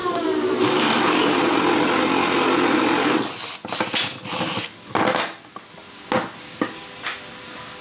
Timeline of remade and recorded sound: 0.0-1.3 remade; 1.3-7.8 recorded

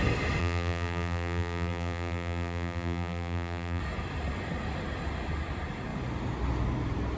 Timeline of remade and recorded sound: 0.0-0.4 recorded; 0.4-3.8 remade; 3.8-7.2 recorded

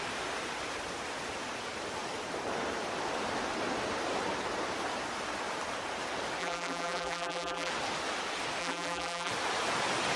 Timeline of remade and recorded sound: 0.0-6.4 recorded; 6.4-7.7 remade; 7.7-8.6 recorded; 8.6-9.3 remade; 9.3-10.2 recorded